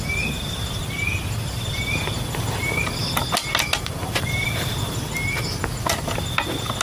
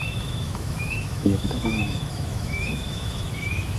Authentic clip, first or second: first